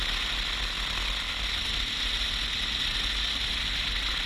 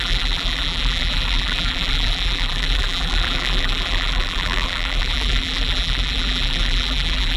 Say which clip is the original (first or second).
first